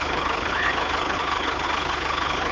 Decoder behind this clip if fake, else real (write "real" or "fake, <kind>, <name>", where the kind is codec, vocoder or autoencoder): fake, codec, HILCodec